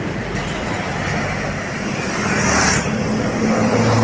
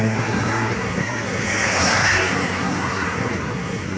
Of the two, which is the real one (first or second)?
first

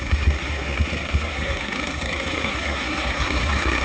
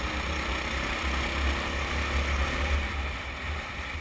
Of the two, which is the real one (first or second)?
second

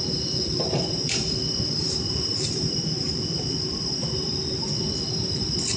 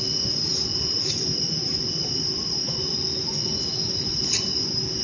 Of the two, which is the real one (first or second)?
second